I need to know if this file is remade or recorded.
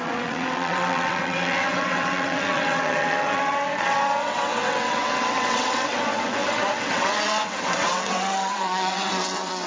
remade